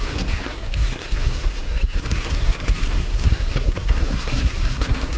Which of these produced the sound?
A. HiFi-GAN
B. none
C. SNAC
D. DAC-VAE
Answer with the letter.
C